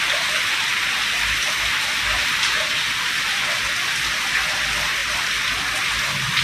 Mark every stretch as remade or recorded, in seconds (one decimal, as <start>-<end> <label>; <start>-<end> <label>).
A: 0.0-6.4 recorded